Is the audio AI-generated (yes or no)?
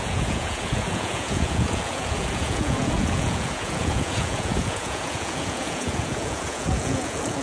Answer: yes